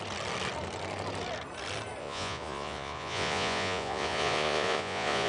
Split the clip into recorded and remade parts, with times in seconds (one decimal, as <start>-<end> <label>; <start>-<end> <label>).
0.0-2.0 recorded; 2.0-5.3 remade